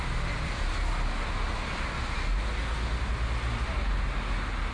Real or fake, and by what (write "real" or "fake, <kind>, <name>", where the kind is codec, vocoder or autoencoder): real